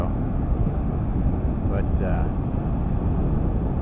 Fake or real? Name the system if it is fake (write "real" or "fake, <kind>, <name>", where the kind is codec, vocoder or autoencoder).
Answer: real